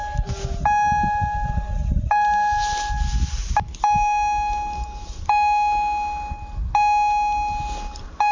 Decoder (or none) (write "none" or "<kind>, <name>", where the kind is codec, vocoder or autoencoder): none